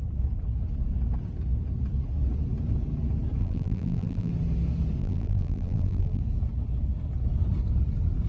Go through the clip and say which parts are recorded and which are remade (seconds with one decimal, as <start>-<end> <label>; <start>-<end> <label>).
0.0-3.4 recorded; 3.4-4.3 remade; 4.3-5.0 recorded; 5.0-6.2 remade; 6.2-8.3 recorded